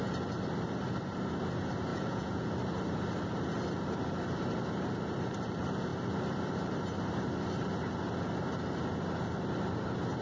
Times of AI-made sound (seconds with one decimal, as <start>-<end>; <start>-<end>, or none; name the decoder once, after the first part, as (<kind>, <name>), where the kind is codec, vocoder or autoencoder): 1.9-2.5 (vocoder, Vocos)